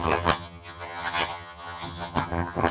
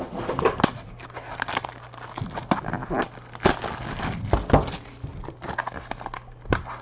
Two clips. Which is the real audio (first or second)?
second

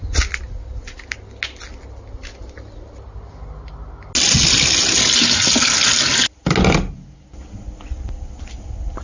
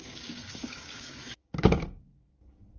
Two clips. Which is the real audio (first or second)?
first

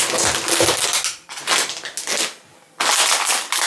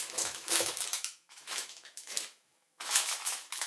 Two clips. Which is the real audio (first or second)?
first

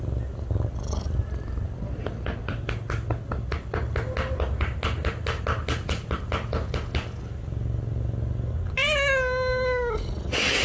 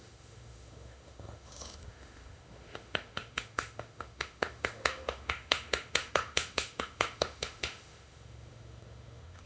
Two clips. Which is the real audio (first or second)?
first